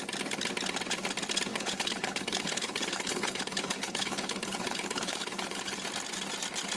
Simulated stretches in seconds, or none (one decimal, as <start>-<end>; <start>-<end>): 1.5-5.6